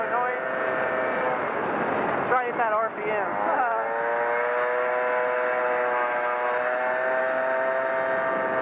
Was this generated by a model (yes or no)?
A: no